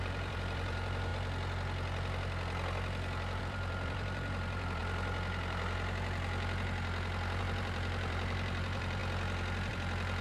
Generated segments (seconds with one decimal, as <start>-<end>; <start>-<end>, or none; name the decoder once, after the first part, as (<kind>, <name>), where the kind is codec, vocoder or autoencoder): 0.0-1.1 (vocoder, BigVGAN v2); 3.4-4.8; 7.4-9.0; 9.7-10.2